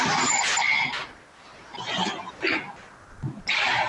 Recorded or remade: remade